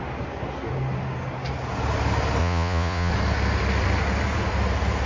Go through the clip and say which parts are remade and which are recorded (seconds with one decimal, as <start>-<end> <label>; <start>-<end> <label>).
0.0-2.4 recorded; 2.4-3.1 remade; 3.1-5.1 recorded